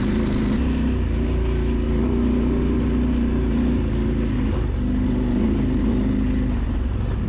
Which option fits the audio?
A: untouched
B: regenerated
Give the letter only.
A